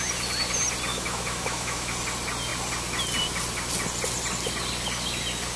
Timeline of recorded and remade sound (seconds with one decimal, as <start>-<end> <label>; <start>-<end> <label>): 0.0-0.9 recorded; 0.9-1.9 remade; 1.9-5.6 recorded